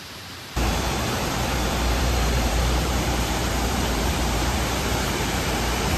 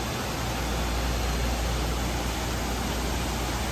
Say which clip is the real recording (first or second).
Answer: second